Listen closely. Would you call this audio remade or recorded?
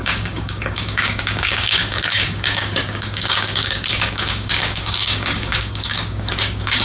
remade